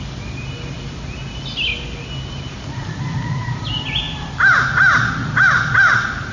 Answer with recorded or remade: recorded